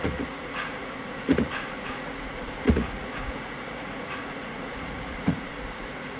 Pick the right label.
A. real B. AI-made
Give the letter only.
B